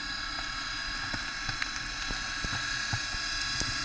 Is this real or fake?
real